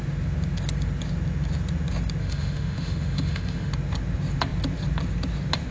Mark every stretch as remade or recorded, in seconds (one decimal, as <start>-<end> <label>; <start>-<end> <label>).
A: 0.0-2.2 recorded; 2.2-3.7 remade; 3.7-5.7 recorded

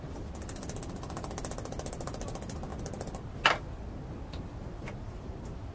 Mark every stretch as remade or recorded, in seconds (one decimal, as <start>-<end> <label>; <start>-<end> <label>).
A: 0.0-5.7 recorded

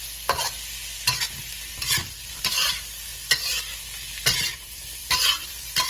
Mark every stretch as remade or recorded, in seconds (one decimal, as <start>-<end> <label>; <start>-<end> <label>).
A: 0.0-2.0 recorded; 2.0-2.7 remade; 2.7-4.3 recorded; 4.3-5.9 remade

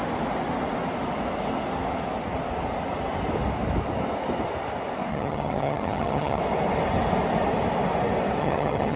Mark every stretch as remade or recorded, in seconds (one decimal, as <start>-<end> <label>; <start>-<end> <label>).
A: 0.0-5.1 recorded; 5.1-6.4 remade; 6.4-8.4 recorded; 8.4-9.0 remade

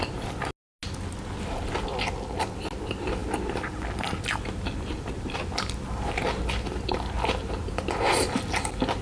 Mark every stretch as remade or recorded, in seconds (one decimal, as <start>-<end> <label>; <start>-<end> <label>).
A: 0.0-9.0 recorded

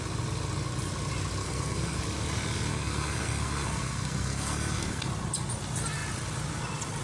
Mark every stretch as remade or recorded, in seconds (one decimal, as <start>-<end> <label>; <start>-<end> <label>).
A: 0.0-1.4 recorded; 1.4-2.0 remade; 2.0-2.7 recorded; 2.7-5.0 remade; 5.0-7.0 recorded